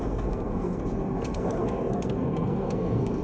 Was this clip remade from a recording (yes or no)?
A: yes